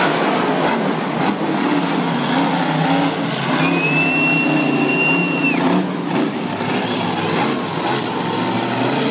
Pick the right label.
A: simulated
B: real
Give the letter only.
B